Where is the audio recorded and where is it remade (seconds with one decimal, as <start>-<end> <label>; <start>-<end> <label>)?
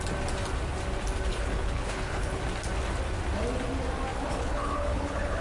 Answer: 0.0-1.3 recorded; 1.3-2.4 remade; 2.4-4.1 recorded; 4.1-5.4 remade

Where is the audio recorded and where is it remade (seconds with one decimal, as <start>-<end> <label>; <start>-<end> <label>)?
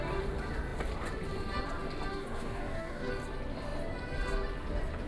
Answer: 0.0-2.1 recorded; 2.1-3.1 remade; 3.1-5.1 recorded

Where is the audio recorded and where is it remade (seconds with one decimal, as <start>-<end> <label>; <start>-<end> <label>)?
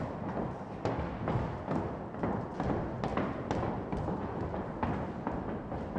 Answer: 0.0-6.0 recorded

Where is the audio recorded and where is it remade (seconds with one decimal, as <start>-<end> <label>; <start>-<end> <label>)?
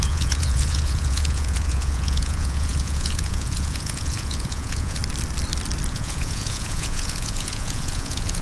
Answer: 0.0-5.0 remade; 5.0-5.9 recorded; 5.9-8.4 remade